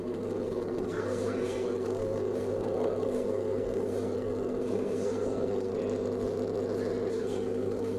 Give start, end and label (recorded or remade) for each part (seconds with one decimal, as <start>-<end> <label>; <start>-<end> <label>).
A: 0.0-5.7 remade; 5.7-7.1 recorded; 7.1-8.0 remade